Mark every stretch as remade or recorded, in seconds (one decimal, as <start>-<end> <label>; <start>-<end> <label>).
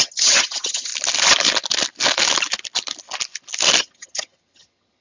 0.0-0.9 remade; 0.9-3.8 recorded; 3.8-5.0 remade